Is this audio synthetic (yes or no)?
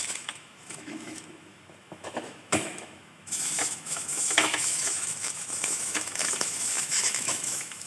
yes